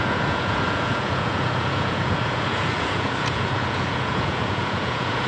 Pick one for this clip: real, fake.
fake